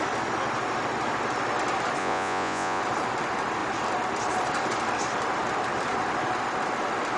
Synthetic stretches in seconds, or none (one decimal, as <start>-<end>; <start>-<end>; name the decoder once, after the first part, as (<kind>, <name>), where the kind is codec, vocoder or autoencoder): 2.0-2.8 (vocoder, Vocos)